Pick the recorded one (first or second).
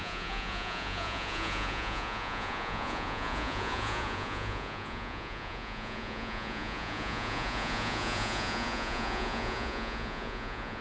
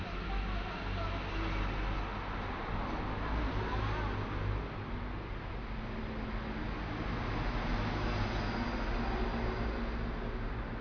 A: second